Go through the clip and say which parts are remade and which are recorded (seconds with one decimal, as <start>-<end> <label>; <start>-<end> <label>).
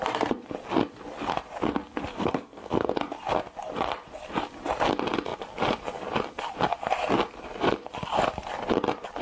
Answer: 0.0-2.1 recorded; 2.1-2.9 remade; 2.9-9.2 recorded